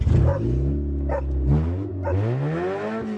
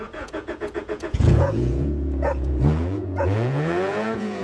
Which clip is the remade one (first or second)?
second